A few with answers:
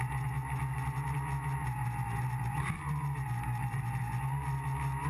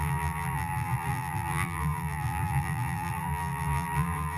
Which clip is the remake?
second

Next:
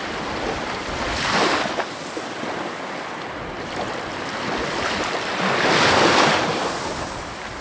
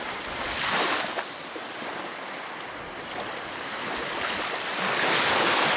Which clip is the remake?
first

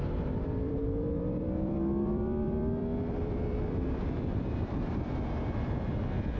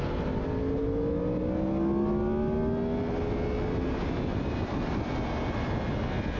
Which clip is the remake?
first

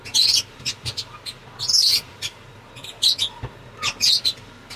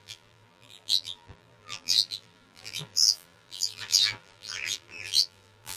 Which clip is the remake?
second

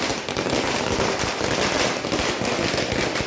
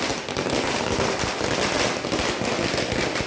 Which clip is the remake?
first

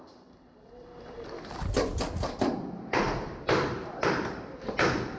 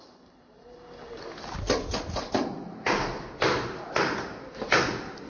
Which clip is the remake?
first